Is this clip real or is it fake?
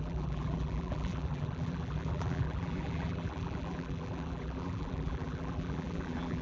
fake